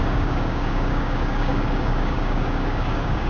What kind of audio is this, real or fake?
fake